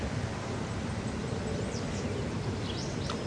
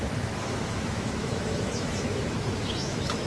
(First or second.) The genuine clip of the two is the first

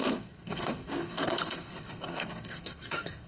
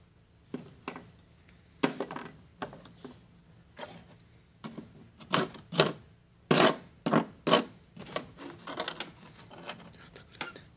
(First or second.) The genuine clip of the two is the second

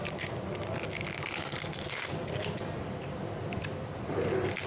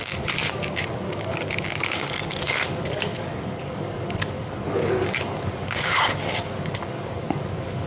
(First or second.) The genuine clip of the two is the first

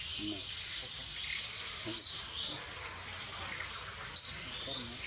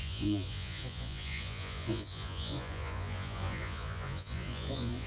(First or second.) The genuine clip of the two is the first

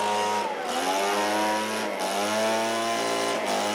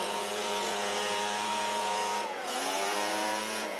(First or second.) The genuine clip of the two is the first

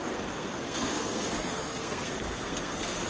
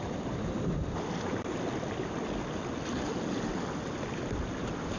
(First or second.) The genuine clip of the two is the second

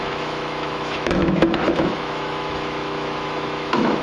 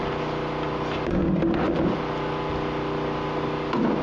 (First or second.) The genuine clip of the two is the second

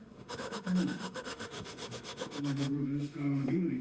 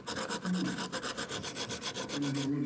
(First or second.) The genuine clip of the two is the second